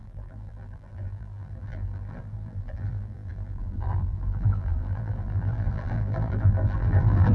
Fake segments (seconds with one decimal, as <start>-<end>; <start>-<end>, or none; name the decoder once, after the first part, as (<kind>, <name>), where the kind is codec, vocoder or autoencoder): 0.0-7.3 (vocoder, BigVGAN v2)